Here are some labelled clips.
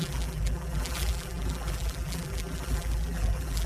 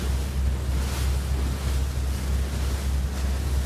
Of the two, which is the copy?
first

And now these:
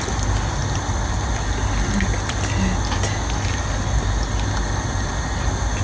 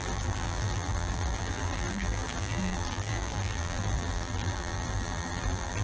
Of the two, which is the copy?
second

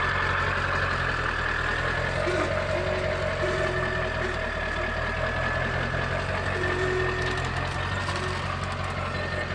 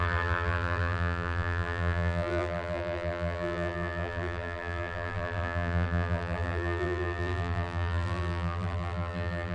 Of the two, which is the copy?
second